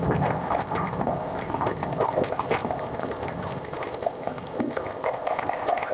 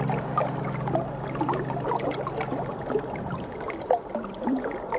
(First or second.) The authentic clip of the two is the second